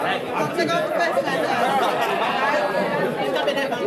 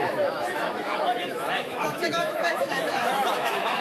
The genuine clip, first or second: first